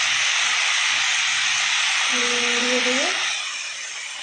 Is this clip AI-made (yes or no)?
no